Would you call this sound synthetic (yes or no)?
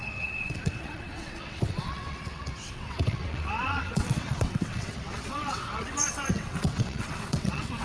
yes